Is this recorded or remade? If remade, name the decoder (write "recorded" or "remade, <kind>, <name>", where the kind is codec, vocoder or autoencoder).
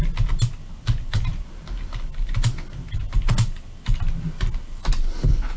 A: recorded